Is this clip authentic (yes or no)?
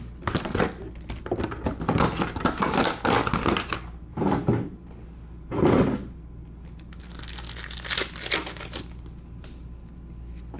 yes